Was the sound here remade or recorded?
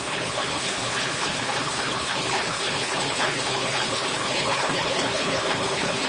remade